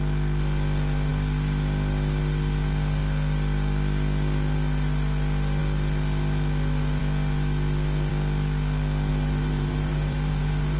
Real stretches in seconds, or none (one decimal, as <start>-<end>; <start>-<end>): 0.0-9.1